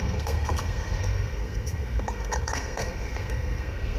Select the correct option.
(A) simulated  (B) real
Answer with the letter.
A